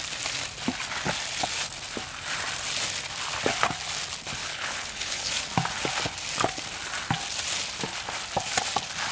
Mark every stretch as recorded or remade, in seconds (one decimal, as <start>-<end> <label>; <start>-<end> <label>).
0.0-4.4 recorded; 4.4-5.3 remade; 5.3-9.1 recorded